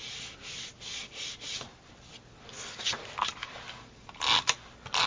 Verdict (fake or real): real